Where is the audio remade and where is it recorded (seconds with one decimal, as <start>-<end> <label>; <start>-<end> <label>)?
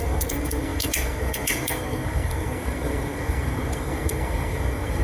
0.0-5.0 remade